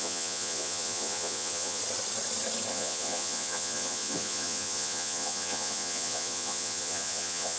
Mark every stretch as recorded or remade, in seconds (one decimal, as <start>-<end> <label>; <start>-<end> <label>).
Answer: 0.0-1.8 remade; 1.8-2.7 recorded; 2.7-7.6 remade